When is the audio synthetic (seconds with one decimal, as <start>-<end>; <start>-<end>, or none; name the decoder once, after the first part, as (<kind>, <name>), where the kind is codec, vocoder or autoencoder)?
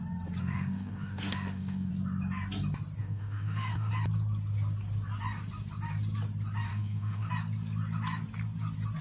0.4-1.9 (autoencoder, DAC-VAE); 3.0-3.9; 6.7-7.3